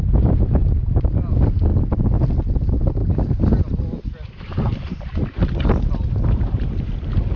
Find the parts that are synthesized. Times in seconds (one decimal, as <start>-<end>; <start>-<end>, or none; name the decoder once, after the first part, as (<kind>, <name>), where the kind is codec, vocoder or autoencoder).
none